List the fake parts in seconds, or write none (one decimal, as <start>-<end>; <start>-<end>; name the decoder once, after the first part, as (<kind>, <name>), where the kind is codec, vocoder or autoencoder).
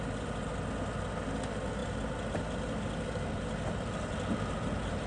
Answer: none